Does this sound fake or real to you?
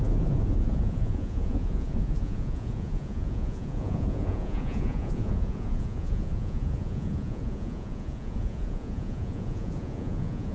fake